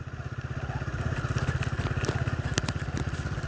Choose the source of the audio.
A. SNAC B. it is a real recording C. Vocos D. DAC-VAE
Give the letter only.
B